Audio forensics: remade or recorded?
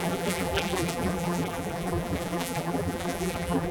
remade